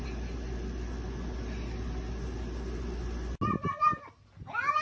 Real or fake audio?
real